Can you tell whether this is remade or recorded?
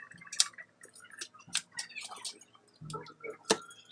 recorded